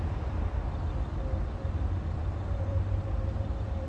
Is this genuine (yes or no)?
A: yes